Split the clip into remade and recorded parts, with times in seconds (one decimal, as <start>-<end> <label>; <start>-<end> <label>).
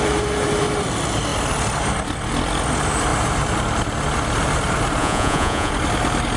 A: 0.0-5.0 recorded; 5.0-5.7 remade; 5.7-6.4 recorded